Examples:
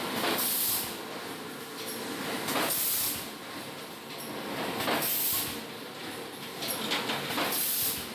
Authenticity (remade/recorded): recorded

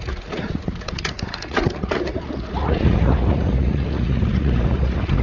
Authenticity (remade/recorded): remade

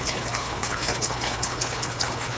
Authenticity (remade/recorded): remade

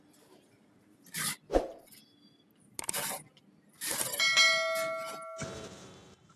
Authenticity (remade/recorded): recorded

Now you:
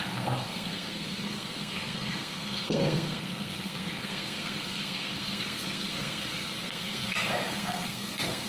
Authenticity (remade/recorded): remade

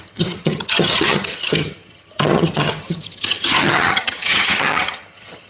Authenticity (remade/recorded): remade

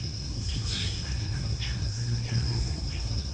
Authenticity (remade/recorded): remade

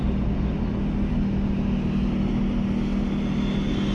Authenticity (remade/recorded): recorded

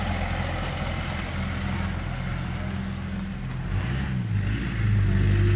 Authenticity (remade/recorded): recorded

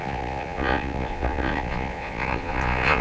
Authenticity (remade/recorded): remade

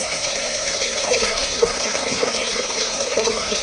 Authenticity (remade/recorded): remade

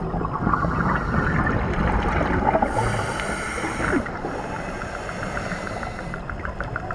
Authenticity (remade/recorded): recorded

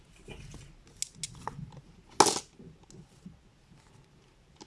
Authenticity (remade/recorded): recorded